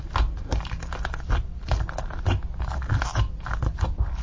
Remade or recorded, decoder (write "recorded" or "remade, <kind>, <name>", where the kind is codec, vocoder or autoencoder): recorded